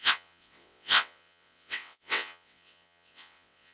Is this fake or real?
fake